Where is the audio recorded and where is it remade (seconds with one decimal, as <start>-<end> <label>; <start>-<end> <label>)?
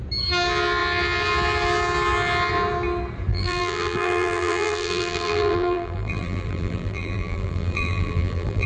0.0-3.3 recorded; 3.3-8.7 remade